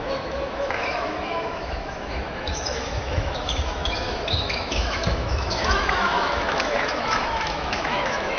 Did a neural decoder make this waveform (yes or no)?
yes